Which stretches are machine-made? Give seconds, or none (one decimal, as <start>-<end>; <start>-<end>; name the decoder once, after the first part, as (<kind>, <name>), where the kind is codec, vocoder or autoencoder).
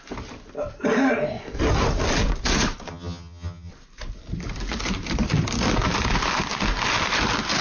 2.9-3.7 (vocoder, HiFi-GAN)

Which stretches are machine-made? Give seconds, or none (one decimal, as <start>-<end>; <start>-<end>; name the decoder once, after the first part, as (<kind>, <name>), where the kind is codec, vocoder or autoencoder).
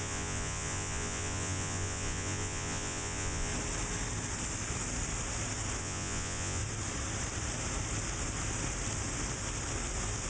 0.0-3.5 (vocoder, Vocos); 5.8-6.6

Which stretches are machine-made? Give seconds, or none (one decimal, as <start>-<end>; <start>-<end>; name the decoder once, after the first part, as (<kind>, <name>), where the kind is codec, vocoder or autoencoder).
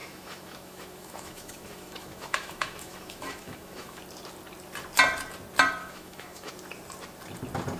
0.0-4.0 (autoencoder, DAC-VAE); 5.8-6.5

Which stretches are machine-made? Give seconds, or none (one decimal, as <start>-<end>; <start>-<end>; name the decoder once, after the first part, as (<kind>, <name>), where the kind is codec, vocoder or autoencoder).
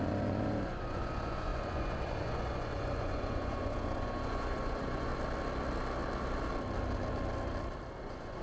0.0-5.1 (vocoder, Vocos); 8.0-8.4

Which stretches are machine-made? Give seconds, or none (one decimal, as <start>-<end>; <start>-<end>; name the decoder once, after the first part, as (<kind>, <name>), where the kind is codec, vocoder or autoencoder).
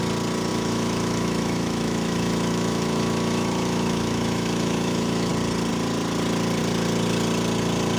0.5-5.3 (autoencoder, DAC-VAE)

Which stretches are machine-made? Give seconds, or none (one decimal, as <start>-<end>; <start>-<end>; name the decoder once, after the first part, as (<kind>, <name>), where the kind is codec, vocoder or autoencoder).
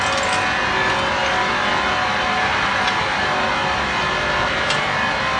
none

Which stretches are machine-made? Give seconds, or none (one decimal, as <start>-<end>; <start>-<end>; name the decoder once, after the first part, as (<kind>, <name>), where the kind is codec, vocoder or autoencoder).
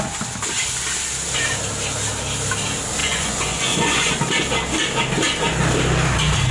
3.0-4.1 (vocoder, Vocos)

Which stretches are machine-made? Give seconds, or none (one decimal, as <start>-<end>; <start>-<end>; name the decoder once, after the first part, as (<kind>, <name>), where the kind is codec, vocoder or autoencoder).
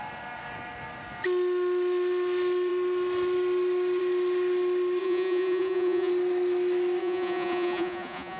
5.0-6.1 (vocoder, Vocos); 7.0-8.4